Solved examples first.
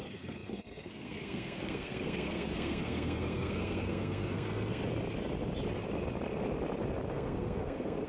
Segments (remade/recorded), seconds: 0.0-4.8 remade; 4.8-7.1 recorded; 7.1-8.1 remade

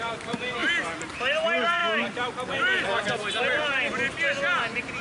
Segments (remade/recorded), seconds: 0.0-5.0 recorded

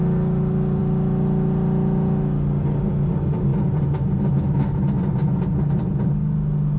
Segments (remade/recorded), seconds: 0.0-6.8 recorded

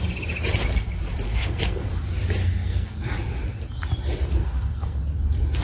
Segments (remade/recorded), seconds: 0.0-1.3 recorded; 1.3-1.9 remade; 1.9-2.4 recorded; 2.4-3.1 remade; 3.1-4.4 recorded; 4.4-5.0 remade; 5.0-5.6 recorded

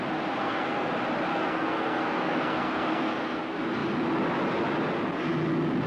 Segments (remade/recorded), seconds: 0.0-0.4 recorded; 0.4-0.9 remade; 0.9-1.3 recorded; 1.3-3.4 remade; 3.4-5.9 recorded

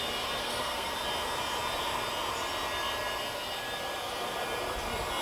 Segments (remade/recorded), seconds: 0.0-0.4 recorded; 0.4-0.9 remade; 0.9-5.2 recorded

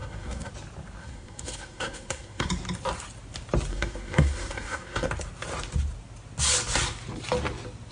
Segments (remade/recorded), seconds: 0.0-0.5 remade; 0.5-1.0 recorded; 1.0-2.5 remade; 2.5-3.7 recorded; 3.7-5.1 remade; 5.1-7.9 recorded